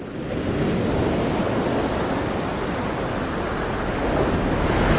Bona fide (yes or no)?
yes